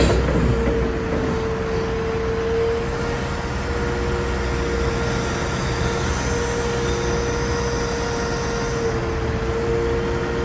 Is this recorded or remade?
recorded